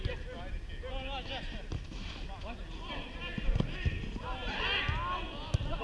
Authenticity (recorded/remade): recorded